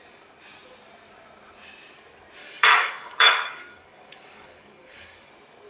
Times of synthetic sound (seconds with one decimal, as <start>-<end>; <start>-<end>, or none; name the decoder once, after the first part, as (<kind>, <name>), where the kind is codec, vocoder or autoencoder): 2.4-5.3 (codec, DAC)